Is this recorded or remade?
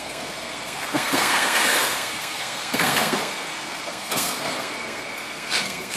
remade